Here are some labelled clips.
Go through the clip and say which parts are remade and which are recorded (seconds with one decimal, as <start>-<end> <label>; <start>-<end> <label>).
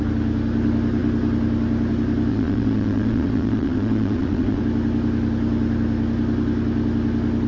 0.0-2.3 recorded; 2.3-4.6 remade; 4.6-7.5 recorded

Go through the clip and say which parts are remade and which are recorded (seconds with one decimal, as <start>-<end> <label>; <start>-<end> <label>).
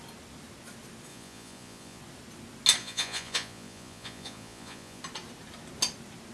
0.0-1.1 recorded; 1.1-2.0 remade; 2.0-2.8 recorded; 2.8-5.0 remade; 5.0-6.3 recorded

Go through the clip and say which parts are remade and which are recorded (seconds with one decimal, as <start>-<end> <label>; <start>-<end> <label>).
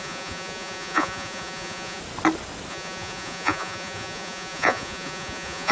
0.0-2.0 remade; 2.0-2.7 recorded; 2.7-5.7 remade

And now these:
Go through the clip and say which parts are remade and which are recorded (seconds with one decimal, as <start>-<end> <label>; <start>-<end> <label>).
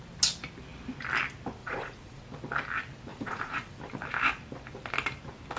0.0-1.6 recorded; 1.6-2.2 remade; 2.2-3.1 recorded; 3.1-3.8 remade; 3.8-5.6 recorded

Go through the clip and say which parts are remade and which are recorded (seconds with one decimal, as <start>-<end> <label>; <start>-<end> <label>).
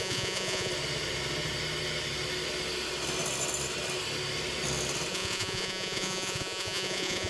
0.0-0.7 remade; 0.7-5.1 recorded; 5.1-7.3 remade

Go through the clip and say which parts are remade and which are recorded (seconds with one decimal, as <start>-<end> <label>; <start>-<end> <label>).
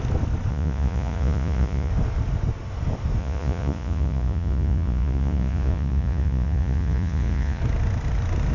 0.0-0.5 recorded; 0.5-1.9 remade; 1.9-3.2 recorded; 3.2-7.6 remade; 7.6-8.5 recorded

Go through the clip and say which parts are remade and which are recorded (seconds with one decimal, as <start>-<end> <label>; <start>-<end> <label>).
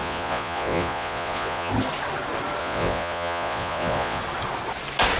0.0-1.7 remade; 1.7-2.6 recorded; 2.6-4.2 remade; 4.2-5.2 recorded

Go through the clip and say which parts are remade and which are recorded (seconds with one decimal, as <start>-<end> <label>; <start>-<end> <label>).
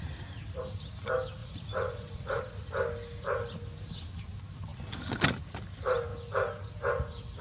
0.0-1.4 recorded; 1.4-2.4 remade; 2.4-7.4 recorded